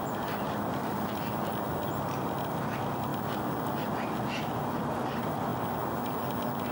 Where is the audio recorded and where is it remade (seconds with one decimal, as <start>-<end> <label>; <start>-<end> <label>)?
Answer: 0.0-6.7 recorded